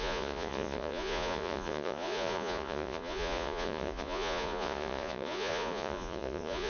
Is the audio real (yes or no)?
no